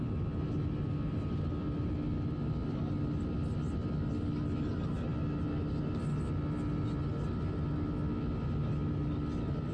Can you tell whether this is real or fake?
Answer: real